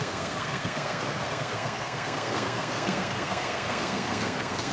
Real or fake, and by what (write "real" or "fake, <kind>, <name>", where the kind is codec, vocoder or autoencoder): fake, codec, SNAC